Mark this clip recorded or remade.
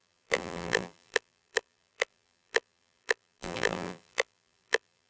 remade